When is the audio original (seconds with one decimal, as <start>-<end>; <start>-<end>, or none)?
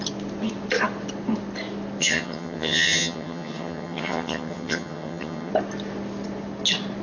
0.0-2.0; 5.5-7.0